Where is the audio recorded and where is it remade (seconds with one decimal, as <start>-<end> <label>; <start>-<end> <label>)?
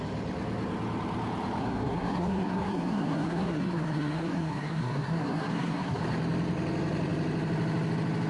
0.0-1.6 recorded; 1.6-6.0 remade; 6.0-8.3 recorded